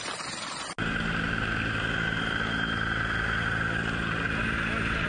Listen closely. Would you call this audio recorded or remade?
recorded